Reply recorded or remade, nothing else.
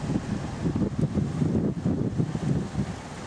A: recorded